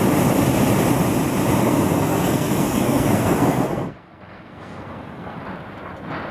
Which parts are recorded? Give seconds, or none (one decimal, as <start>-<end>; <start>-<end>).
0.0-1.6; 5.4-6.3